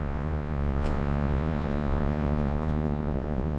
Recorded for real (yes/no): no